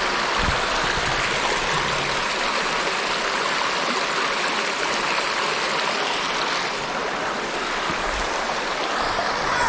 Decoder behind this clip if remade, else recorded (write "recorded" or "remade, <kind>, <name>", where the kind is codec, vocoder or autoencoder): recorded